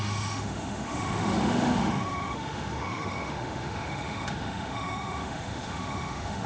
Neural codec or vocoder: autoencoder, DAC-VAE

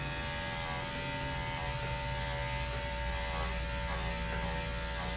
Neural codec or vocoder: none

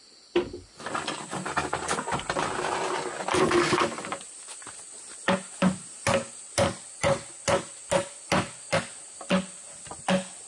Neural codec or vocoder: none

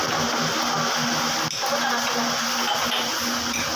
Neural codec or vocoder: none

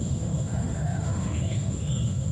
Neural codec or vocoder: autoencoder, DAC-VAE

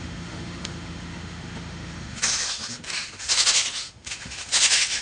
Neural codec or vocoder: autoencoder, DAC-VAE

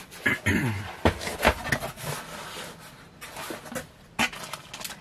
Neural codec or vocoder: none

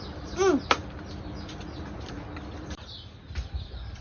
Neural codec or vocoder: none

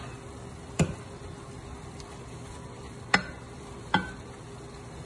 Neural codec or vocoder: none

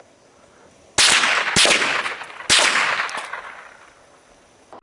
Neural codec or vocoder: none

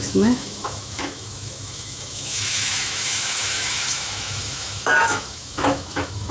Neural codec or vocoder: autoencoder, DAC-VAE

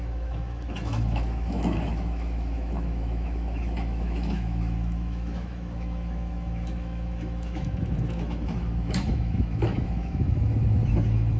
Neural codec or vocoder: autoencoder, DAC-VAE